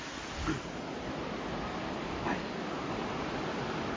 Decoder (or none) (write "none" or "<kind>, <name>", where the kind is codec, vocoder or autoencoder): none